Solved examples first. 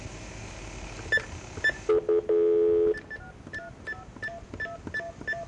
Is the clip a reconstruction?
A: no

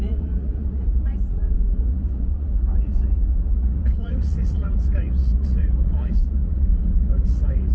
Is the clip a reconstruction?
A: yes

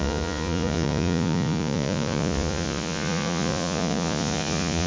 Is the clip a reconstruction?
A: yes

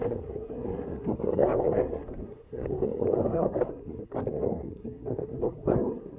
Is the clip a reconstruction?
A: yes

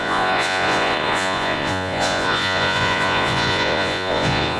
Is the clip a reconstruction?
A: yes